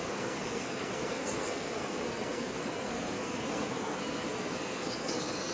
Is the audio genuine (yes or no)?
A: no